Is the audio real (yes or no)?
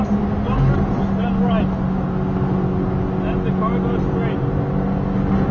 yes